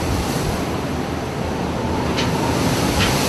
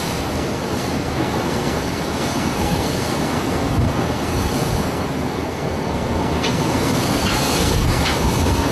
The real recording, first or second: first